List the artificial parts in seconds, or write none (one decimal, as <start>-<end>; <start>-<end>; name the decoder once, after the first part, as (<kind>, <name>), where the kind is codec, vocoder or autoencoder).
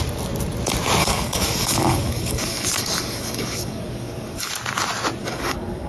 1.0-4.5 (codec, DAC); 5.2-5.9